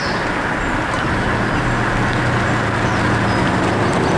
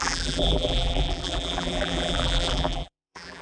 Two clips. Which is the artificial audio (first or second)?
second